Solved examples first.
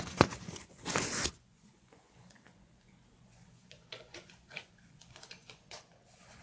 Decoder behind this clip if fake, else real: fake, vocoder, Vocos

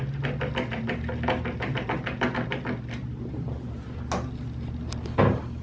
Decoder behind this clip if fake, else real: real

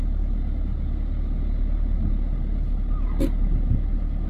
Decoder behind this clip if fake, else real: real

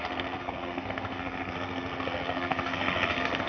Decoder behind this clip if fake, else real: fake, codec, SNAC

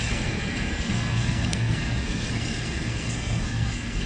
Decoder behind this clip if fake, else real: fake, codec, SNAC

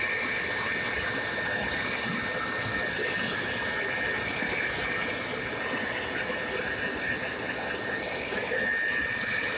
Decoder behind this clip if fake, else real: real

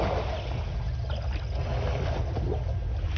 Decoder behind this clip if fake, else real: real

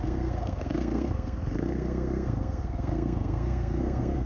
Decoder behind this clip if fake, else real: fake, codec, SNAC